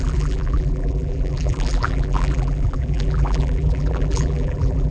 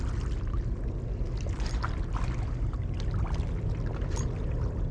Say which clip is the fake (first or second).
first